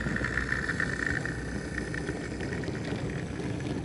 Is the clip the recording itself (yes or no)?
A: yes